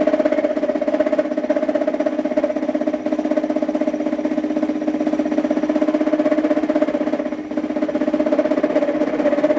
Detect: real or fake real